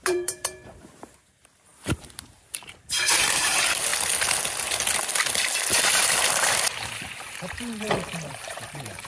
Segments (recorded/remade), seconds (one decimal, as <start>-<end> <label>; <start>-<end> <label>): 0.0-3.9 remade; 3.9-5.8 recorded; 5.8-9.1 remade